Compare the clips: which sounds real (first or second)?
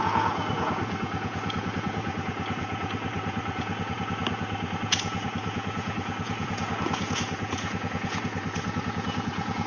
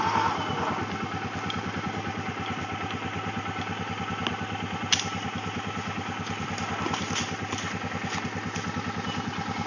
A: second